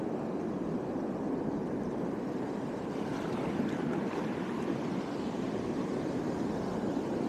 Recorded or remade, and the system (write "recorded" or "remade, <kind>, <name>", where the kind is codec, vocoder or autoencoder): remade, vocoder, BigVGAN v2